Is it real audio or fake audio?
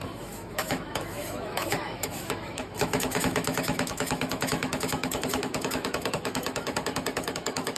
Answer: fake